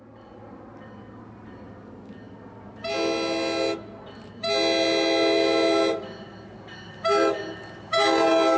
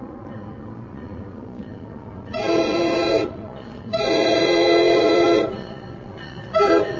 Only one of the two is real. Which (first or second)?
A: first